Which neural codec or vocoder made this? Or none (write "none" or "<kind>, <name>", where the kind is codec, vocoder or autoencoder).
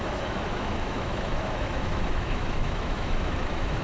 autoencoder, DAC-VAE